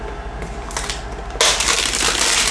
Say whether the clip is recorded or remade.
recorded